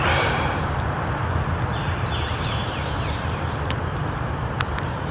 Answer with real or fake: real